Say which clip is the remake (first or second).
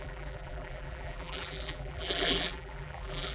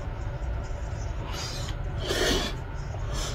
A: first